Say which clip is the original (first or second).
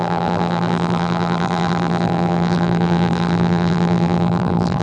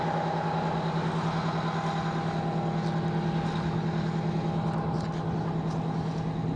second